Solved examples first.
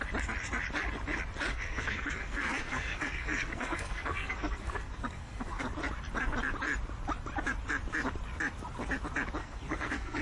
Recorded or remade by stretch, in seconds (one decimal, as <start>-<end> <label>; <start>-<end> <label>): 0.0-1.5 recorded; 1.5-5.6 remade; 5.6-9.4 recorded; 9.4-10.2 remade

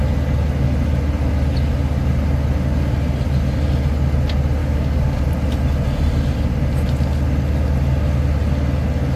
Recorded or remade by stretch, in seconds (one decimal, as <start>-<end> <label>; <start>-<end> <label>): 0.0-4.6 recorded; 4.6-5.2 remade; 5.2-9.2 recorded

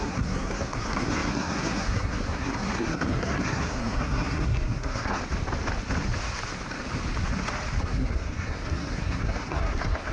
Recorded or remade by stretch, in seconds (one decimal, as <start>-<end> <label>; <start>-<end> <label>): 0.0-5.2 remade; 5.2-7.8 recorded; 7.8-10.1 remade

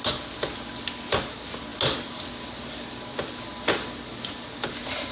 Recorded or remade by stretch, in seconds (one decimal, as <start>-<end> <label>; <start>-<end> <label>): 0.0-5.1 recorded

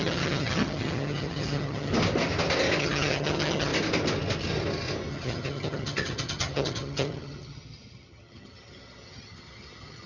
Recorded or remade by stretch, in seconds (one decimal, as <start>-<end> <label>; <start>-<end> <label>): 0.0-1.9 remade; 1.9-2.8 recorded; 2.8-3.7 remade; 3.7-5.1 recorded; 5.1-10.1 remade